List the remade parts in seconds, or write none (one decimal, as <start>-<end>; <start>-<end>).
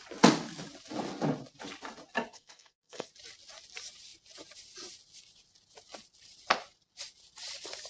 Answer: 2.3-3.1